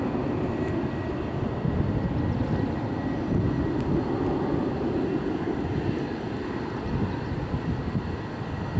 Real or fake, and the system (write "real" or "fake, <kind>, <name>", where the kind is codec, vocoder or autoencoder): real